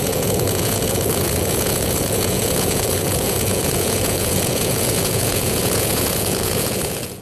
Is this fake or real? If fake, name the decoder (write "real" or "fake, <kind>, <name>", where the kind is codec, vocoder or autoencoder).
fake, vocoder, Vocos